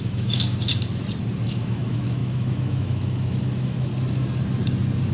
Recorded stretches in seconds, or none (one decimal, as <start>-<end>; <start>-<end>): 0.7-1.4; 3.9-5.1